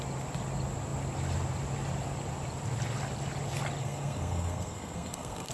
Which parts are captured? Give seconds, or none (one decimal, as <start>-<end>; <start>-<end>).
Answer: 0.0-3.8